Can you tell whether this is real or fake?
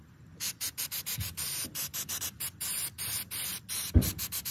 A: real